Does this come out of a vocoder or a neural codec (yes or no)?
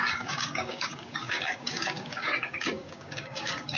yes